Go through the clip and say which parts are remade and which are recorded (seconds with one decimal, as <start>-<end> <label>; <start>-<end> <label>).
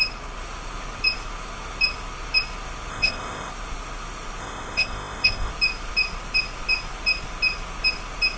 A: 0.0-2.9 recorded; 2.9-3.5 remade; 3.5-4.4 recorded; 4.4-5.5 remade; 5.5-8.4 recorded